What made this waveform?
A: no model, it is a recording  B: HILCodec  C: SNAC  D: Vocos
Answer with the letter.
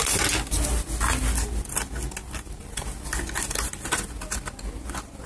A